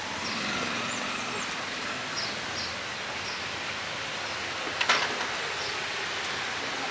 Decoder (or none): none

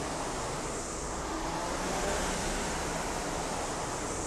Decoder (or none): none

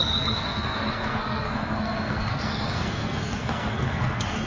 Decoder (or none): codec, SNAC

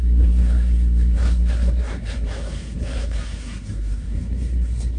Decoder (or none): codec, SNAC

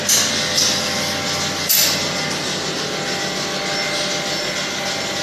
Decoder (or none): none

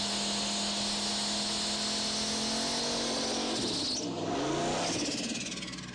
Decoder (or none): none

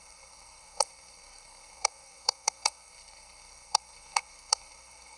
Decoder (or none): codec, SNAC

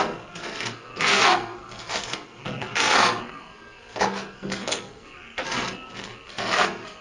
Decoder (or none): codec, SNAC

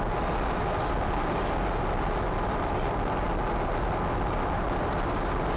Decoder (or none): none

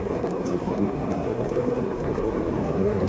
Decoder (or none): codec, SNAC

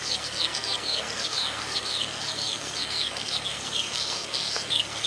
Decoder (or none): codec, SNAC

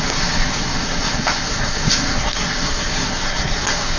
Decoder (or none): codec, SNAC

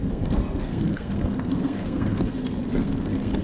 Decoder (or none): codec, SNAC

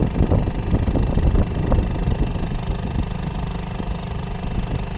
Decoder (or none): none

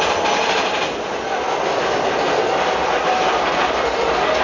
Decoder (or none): none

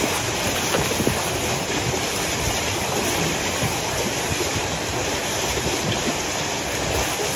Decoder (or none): none